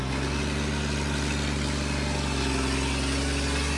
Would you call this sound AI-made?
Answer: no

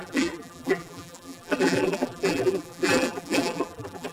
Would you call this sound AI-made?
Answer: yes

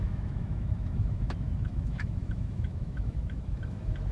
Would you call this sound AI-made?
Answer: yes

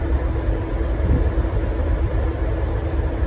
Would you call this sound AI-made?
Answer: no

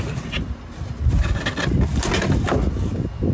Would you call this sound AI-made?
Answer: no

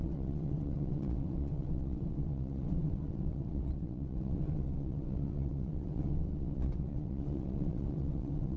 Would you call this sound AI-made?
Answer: yes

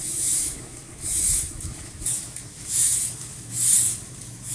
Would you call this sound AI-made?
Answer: yes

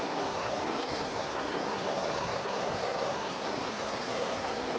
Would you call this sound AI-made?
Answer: yes